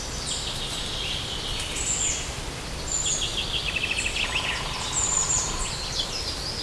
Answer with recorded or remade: recorded